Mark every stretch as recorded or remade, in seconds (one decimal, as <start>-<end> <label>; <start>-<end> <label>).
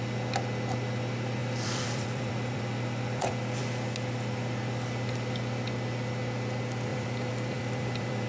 0.0-1.4 recorded; 1.4-3.6 remade; 3.6-6.9 recorded; 6.9-8.3 remade